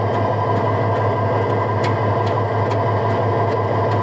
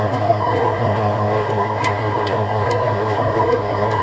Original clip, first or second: first